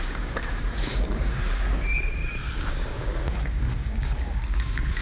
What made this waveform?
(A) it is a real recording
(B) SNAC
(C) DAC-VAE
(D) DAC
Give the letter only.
D